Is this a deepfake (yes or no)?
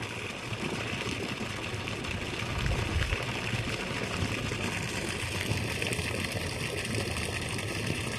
no